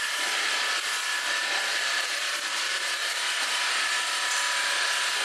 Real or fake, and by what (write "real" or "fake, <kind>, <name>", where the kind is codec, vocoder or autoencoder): real